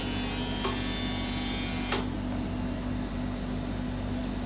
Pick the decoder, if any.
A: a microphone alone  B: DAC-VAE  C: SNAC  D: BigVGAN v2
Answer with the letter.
A